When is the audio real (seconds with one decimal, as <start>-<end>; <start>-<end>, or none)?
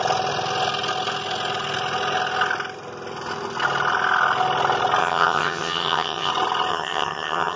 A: 0.0-5.0; 6.3-6.7